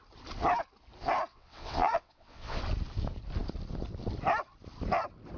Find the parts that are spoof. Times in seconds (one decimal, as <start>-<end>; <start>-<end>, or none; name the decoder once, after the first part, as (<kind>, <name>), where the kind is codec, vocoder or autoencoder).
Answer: 1.3-2.6 (vocoder, WaveNeXt)